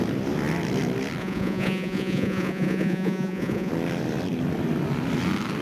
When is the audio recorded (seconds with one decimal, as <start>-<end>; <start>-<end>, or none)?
0.0-1.2; 3.7-5.6